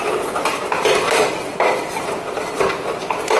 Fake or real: real